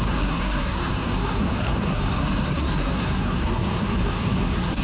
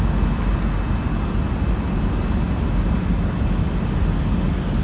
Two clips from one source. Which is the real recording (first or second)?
second